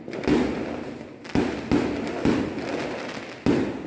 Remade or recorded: recorded